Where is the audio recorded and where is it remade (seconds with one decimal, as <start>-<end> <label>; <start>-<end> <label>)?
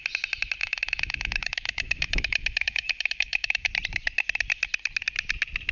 0.0-0.6 recorded; 0.6-3.7 remade; 3.7-5.7 recorded